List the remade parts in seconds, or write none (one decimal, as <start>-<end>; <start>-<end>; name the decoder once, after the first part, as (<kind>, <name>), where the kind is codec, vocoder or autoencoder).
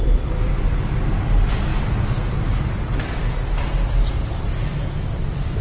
0.0-1.7 (vocoder, BigVGAN v2); 2.6-5.6